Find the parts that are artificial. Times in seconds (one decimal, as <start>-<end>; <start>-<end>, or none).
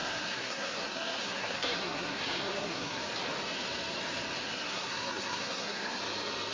0.0-3.0; 4.4-6.0